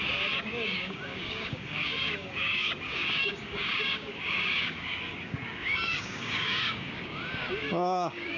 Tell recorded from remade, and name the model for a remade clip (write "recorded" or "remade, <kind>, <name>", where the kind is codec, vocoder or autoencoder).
remade, codec, DAC